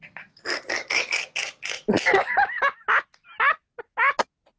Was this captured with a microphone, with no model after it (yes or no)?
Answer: yes